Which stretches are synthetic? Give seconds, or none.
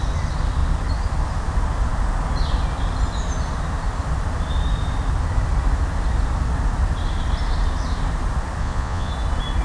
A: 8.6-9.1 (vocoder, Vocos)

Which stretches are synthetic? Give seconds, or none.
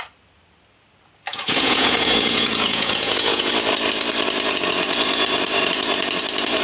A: 1.3-3.5 (vocoder, Vocos)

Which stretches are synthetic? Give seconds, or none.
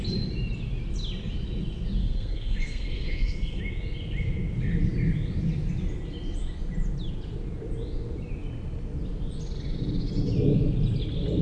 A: 2.0-3.6 (codec, SNAC)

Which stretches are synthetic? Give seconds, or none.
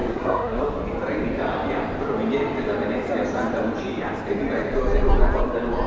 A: 0.0-0.6 (codec, SNAC)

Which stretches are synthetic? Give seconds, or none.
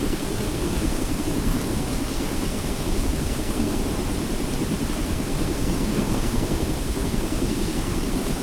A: 0.0-3.8 (codec, SNAC); 4.9-8.4